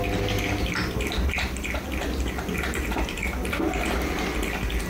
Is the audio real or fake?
real